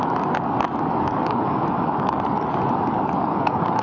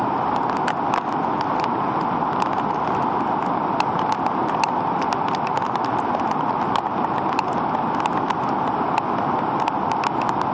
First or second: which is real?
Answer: second